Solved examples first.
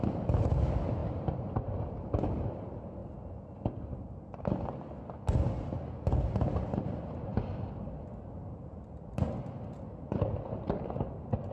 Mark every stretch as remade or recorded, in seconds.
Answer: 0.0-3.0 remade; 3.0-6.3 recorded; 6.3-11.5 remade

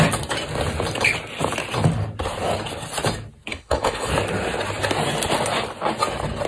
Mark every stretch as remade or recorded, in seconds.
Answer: 0.0-3.5 recorded; 3.5-4.1 remade; 4.1-6.5 recorded

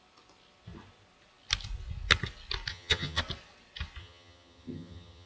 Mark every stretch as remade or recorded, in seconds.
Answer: 0.0-2.7 recorded; 2.7-3.2 remade; 3.2-4.0 recorded; 4.0-5.3 remade

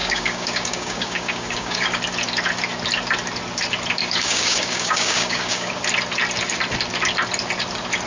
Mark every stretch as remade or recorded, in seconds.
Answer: 0.0-2.0 remade; 2.0-4.0 recorded; 4.0-5.7 remade; 5.7-8.1 recorded

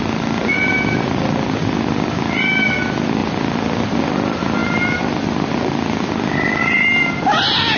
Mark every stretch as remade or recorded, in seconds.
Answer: 0.0-7.8 recorded